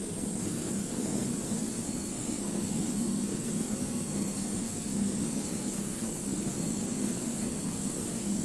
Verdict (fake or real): fake